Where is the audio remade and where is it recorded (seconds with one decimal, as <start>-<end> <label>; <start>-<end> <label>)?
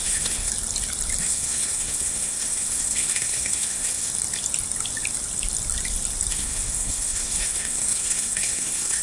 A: 0.0-0.5 remade; 0.5-1.2 recorded; 1.2-4.1 remade; 4.1-6.3 recorded; 6.3-9.0 remade